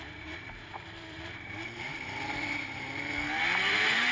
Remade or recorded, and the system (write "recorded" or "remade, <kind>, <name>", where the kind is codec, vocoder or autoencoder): remade, vocoder, BigVGAN v2